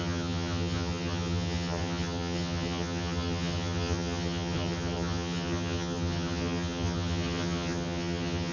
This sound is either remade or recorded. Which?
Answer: remade